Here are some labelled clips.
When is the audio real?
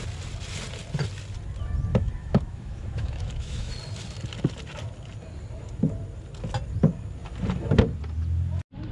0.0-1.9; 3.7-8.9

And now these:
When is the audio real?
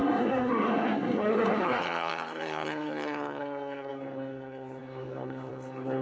none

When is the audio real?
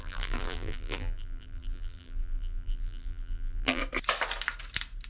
3.8-5.1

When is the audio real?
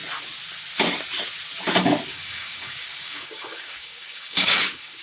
0.0-2.1